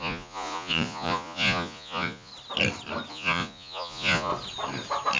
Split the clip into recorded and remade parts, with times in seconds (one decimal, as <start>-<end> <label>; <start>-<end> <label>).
0.0-2.3 remade; 2.3-3.1 recorded; 3.1-4.3 remade; 4.3-5.2 recorded